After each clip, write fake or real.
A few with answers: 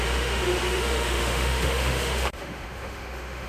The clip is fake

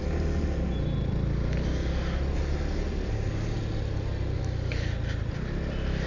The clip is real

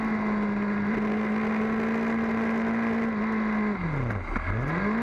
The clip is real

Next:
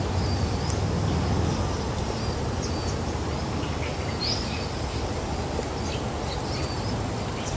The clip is real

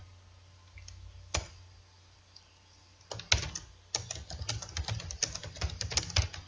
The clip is real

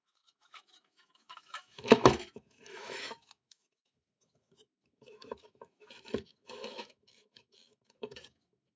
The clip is fake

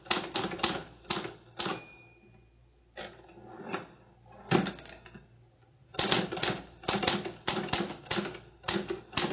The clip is real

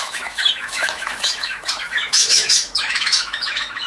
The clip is fake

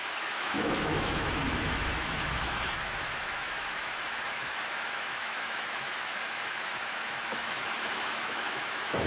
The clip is fake